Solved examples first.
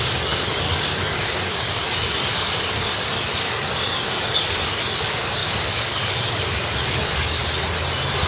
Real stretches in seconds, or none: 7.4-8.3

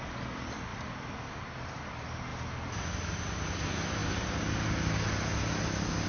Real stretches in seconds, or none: 0.0-6.1

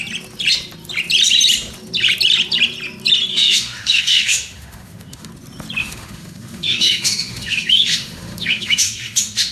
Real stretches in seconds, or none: 0.0-3.3; 5.3-5.8

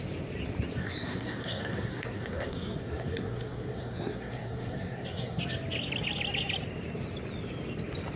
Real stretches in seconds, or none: 0.0-0.8; 5.4-8.2

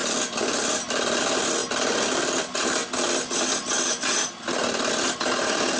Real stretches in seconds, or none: 0.0-5.8

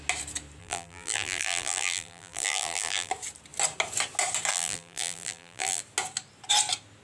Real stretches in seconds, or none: 0.0-0.6; 3.1-4.5; 5.8-7.0

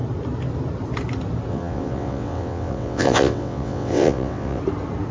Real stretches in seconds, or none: 0.0-1.5; 4.6-5.1